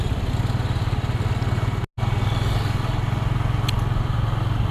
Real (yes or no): yes